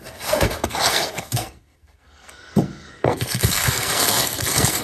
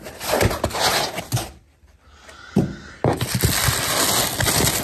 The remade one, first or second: first